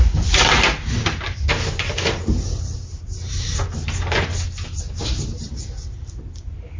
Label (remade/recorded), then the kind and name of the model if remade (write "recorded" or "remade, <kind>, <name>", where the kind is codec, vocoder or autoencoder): recorded